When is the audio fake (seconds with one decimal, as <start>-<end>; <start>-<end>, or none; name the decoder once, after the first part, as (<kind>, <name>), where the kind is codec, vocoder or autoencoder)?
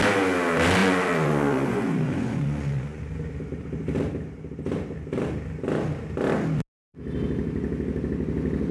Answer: 0.8-3.0 (vocoder, Vocos)